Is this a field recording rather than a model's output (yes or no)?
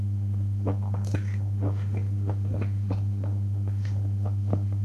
no